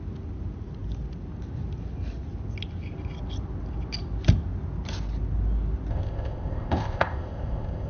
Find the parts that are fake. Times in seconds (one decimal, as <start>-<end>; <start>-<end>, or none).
5.9-7.9